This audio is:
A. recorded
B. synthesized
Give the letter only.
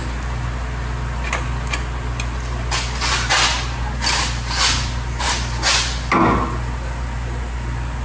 A